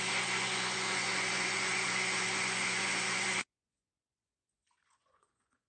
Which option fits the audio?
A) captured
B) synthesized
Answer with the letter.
B